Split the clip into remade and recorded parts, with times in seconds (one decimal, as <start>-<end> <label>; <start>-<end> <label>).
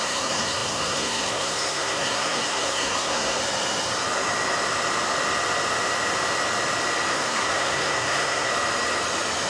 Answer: 0.0-3.4 remade; 3.4-7.1 recorded; 7.1-8.5 remade; 8.5-9.5 recorded